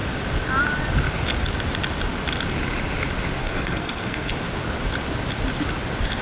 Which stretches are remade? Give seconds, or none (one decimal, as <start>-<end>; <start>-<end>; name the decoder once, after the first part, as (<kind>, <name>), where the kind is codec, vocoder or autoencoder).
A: 3.4-4.3 (codec, SNAC)